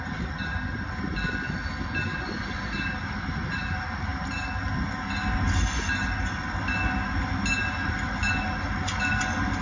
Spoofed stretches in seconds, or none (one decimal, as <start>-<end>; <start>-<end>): none

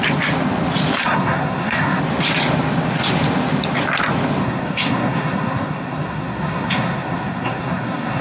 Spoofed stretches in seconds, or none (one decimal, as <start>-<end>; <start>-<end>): 1.0-2.0; 4.4-8.2

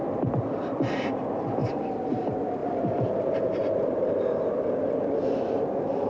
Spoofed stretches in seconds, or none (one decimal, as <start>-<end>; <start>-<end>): 1.6-2.2; 2.6-3.4

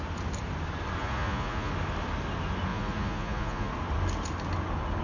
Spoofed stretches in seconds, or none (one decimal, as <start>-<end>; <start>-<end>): 1.0-1.7; 2.7-3.7

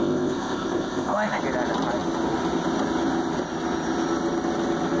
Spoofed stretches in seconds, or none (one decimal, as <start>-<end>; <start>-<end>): 0.0-1.4

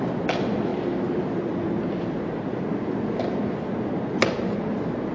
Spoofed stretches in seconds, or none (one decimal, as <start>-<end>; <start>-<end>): none